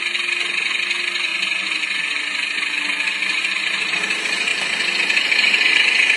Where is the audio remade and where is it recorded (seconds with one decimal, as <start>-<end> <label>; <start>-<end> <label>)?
0.0-6.2 recorded